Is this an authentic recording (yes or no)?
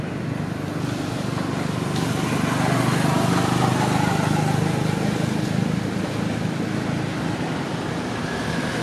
yes